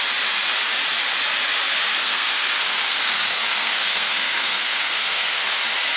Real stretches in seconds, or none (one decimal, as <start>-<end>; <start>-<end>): 0.0-2.0; 5.6-6.0